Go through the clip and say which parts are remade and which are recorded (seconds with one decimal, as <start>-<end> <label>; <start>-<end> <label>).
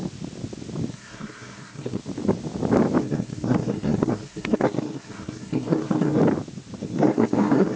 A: 0.0-0.9 recorded; 0.9-2.0 remade; 2.0-3.0 recorded; 3.0-6.2 remade; 6.2-6.8 recorded; 6.8-7.8 remade